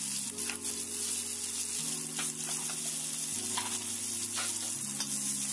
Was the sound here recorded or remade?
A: recorded